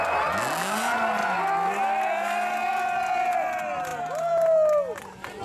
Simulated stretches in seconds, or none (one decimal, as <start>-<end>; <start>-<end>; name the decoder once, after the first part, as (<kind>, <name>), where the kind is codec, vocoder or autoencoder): none